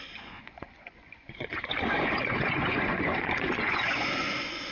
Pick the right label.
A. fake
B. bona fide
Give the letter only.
A